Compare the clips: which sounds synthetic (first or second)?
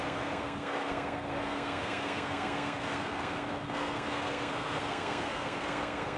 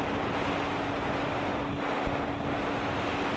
first